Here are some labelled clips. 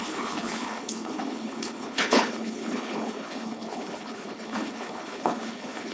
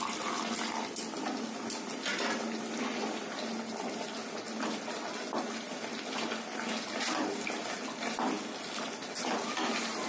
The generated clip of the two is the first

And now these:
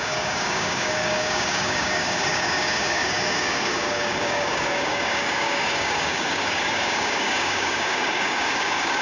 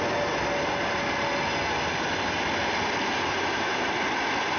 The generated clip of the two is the first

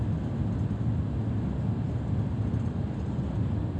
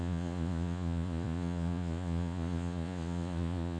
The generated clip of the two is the second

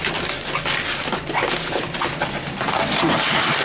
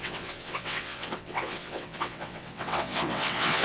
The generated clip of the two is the second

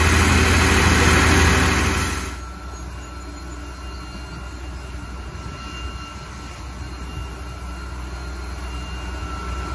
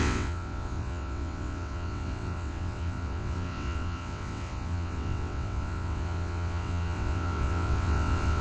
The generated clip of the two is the second